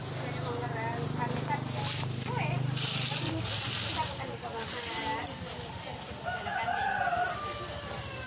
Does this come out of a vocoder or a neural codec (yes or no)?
no